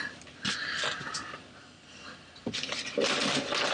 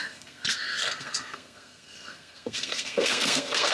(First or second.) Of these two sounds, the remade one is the second